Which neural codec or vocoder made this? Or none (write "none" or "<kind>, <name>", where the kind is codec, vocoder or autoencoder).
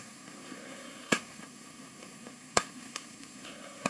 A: codec, SNAC